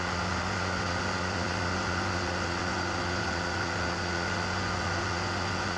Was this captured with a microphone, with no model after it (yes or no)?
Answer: no